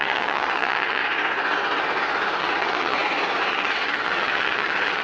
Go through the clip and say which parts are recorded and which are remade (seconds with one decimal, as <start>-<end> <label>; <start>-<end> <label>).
0.0-1.0 remade; 1.0-2.4 recorded; 2.4-3.0 remade; 3.0-3.5 recorded; 3.5-5.0 remade